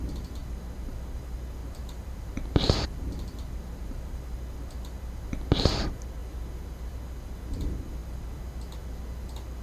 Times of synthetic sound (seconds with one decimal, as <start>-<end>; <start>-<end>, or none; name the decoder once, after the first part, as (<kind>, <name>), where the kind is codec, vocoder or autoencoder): 1.6-4.1 (vocoder, BigVGAN v2)